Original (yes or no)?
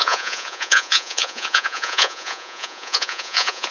no